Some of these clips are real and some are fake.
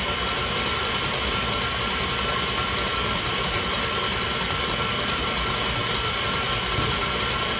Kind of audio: fake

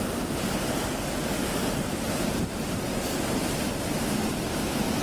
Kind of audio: real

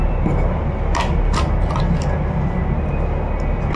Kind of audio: real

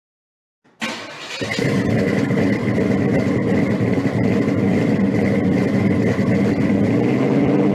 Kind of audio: real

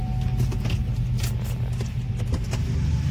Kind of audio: real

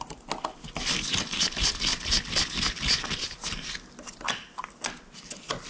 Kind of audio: real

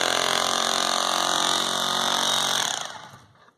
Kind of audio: fake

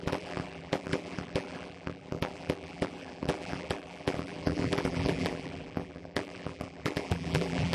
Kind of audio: fake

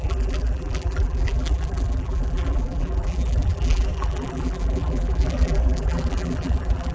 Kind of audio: fake